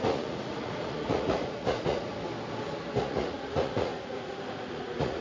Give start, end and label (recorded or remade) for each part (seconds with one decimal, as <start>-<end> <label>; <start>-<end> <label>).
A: 0.0-2.1 remade; 2.1-3.0 recorded; 3.0-5.2 remade